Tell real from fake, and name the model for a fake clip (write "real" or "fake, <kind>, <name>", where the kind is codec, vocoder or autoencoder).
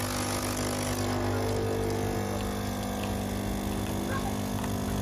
real